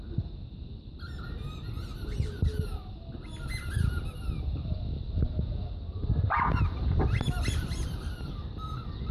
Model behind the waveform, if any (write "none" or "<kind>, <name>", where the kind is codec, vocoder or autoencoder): none